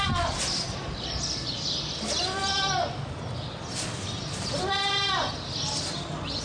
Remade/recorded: recorded